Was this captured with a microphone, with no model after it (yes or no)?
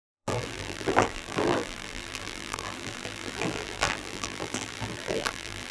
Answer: no